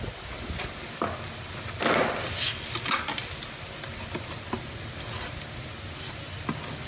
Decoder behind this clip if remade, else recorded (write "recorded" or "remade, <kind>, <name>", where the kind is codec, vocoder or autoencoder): recorded